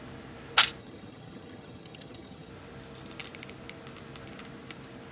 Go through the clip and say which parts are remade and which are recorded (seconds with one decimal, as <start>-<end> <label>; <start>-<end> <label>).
0.0-0.8 recorded; 0.8-2.5 remade; 2.5-5.1 recorded